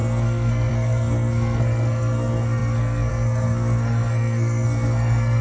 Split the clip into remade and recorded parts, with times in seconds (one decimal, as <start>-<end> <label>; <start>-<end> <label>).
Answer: 0.0-5.4 remade